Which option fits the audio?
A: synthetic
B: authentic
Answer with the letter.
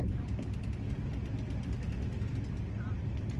B